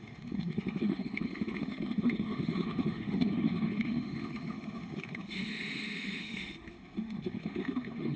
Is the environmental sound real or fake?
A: fake